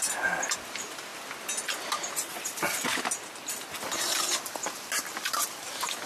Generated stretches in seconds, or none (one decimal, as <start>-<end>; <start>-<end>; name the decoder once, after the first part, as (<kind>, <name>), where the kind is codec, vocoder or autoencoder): none